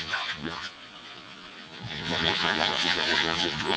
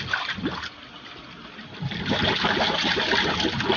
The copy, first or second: first